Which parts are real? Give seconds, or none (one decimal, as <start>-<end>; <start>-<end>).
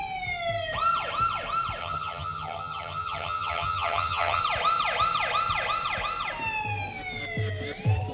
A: 0.0-1.8; 4.4-8.1